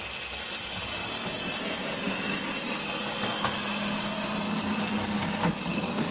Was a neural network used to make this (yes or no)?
no